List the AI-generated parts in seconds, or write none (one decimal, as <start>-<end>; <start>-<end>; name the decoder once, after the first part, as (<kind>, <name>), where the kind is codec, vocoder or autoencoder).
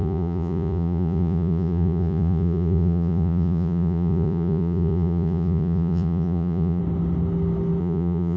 0.0-6.8 (vocoder, Vocos); 7.8-8.4